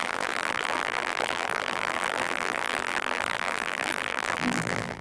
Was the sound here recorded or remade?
remade